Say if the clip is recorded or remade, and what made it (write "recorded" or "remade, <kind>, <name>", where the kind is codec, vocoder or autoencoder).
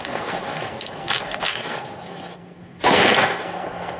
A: remade, codec, SNAC